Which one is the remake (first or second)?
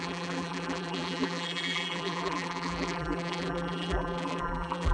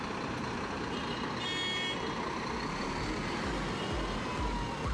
first